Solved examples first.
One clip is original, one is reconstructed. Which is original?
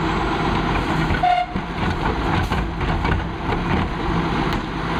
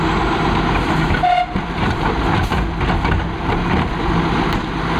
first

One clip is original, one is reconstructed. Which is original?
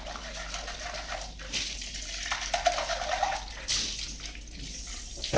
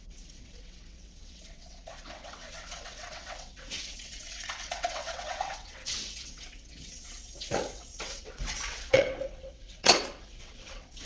first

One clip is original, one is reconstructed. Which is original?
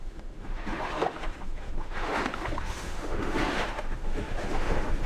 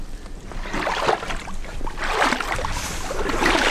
second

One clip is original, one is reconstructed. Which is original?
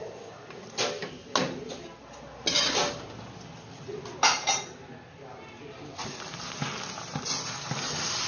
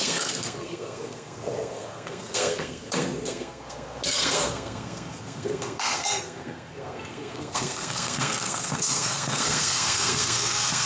first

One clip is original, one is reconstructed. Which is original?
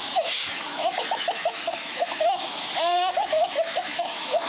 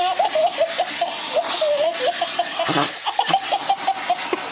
second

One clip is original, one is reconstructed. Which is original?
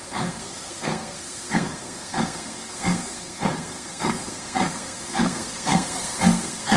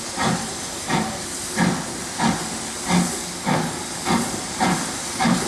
second